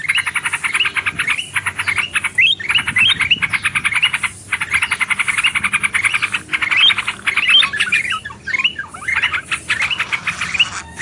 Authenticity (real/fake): real